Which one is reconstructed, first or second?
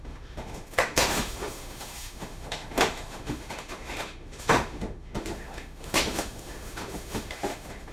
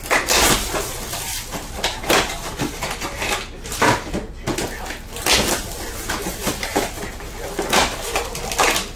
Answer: first